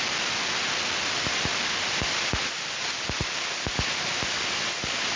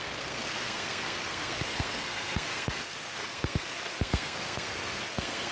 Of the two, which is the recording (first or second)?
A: first